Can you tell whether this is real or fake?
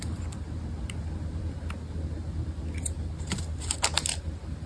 real